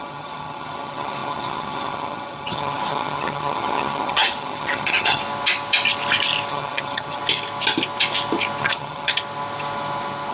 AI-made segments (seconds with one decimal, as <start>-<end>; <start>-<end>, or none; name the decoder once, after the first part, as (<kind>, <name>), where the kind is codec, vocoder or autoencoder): 0.0-5.2 (vocoder, HiFi-GAN); 6.5-7.2; 8.6-9.1